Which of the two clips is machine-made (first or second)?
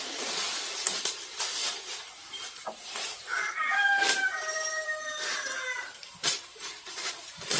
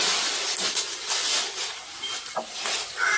first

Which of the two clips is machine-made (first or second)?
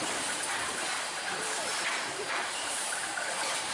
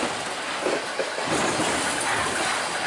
first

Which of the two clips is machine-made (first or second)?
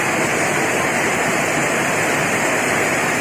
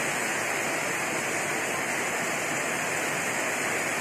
first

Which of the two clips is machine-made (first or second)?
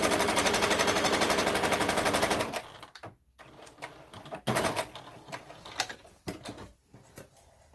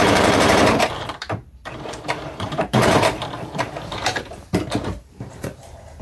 second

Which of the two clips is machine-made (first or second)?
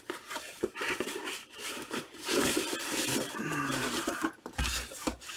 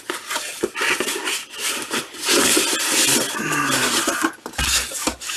first